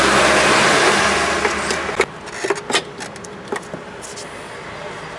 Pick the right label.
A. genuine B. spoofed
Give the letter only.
A